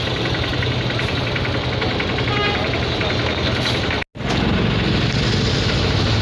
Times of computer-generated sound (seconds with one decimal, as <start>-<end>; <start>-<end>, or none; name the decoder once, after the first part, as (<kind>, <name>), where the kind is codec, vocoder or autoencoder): none